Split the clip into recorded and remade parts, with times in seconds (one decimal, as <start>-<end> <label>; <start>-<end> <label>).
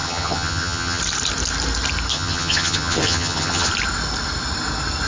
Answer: 0.0-1.0 remade; 1.0-2.1 recorded; 2.1-3.7 remade; 3.7-5.1 recorded